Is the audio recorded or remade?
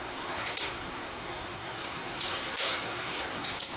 remade